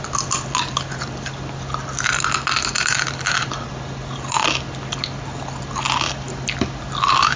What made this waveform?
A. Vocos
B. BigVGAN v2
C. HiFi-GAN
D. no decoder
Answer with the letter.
D